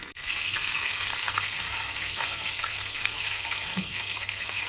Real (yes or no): no